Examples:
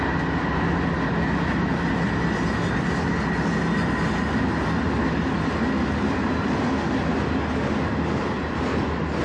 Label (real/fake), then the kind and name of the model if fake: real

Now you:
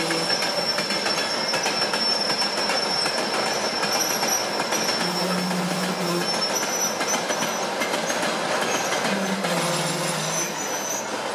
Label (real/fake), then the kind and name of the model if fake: real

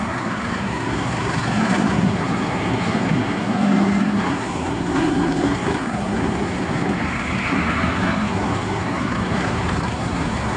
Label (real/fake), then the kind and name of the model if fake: fake, codec, SNAC